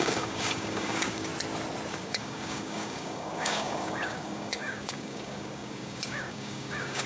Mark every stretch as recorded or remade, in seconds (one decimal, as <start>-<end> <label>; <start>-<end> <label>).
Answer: 0.0-1.3 remade; 1.3-1.9 recorded; 1.9-7.1 remade